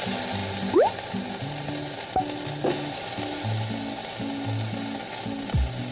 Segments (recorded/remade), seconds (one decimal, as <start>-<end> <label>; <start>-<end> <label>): 0.0-5.9 recorded